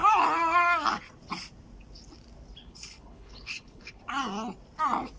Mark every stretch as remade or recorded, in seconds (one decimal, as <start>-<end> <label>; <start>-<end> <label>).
0.0-2.6 recorded; 2.6-4.0 remade; 4.0-5.2 recorded